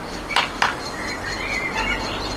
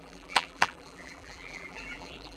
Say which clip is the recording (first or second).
first